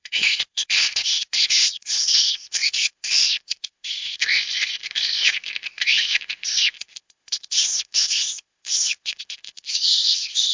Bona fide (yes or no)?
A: no